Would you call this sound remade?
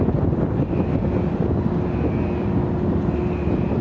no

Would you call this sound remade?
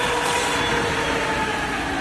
no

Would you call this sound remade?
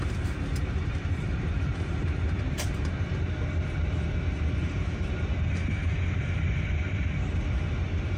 yes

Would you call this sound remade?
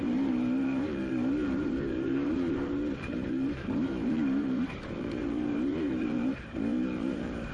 yes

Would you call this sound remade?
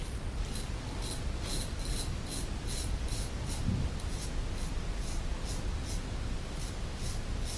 no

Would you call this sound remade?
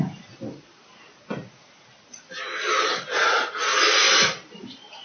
yes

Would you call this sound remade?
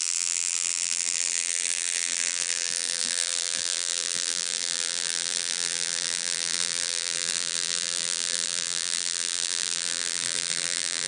yes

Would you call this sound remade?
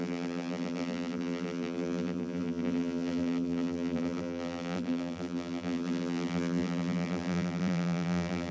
yes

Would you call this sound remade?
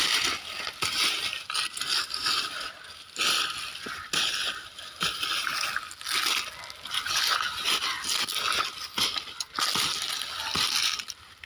no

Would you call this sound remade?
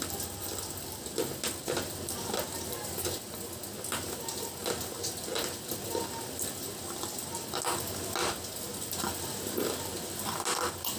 no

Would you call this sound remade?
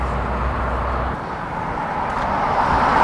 no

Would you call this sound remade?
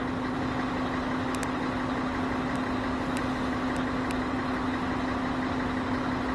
no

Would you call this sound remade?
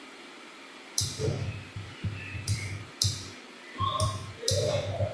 yes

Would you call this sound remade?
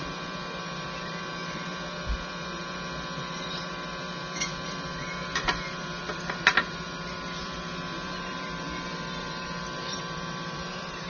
yes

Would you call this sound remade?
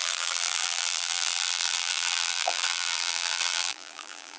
yes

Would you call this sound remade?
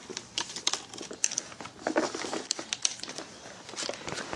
yes